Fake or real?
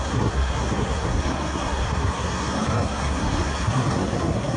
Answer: fake